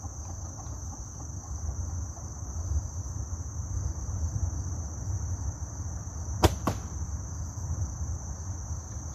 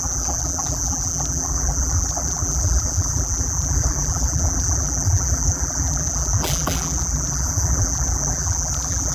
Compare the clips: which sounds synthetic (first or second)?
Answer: second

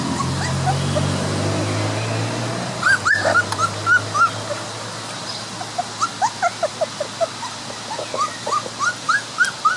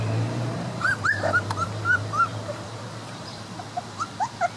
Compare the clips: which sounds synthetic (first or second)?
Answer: second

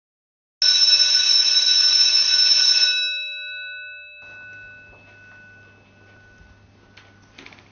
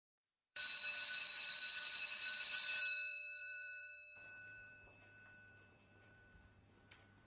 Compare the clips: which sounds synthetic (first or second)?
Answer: second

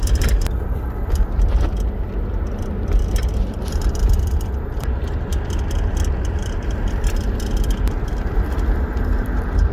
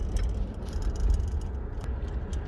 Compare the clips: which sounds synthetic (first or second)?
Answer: first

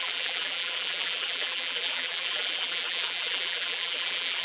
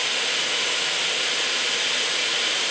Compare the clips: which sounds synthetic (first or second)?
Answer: first